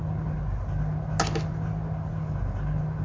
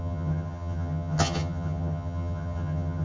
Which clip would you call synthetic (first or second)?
second